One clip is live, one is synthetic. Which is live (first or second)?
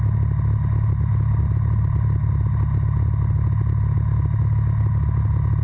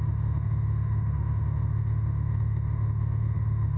first